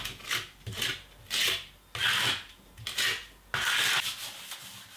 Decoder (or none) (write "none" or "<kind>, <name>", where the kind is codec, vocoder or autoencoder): none